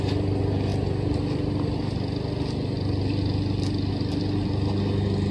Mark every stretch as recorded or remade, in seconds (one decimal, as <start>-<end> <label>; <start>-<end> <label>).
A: 0.0-5.3 recorded